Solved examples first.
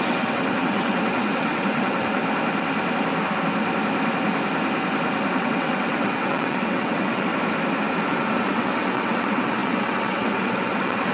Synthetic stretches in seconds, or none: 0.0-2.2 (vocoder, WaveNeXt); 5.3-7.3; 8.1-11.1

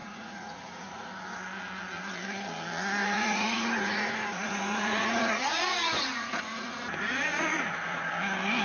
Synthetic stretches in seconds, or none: 0.0-1.1 (vocoder, Vocos); 3.0-8.1

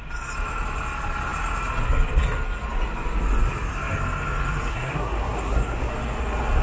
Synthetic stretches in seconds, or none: 4.7-5.9 (codec, SNAC)

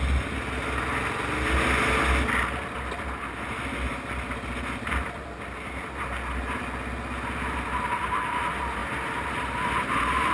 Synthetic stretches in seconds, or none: none

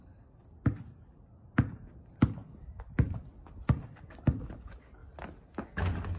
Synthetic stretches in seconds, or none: 2.4-3.8 (vocoder, BigVGAN v2)

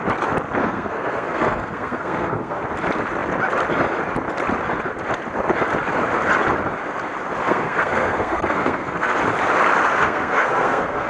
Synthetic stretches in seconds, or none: 0.6-2.6 (codec, SNAC); 7.4-9.2; 10.0-11.1